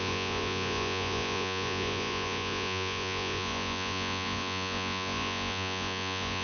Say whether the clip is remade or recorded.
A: remade